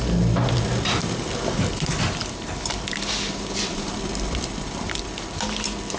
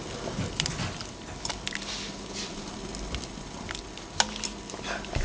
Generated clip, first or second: first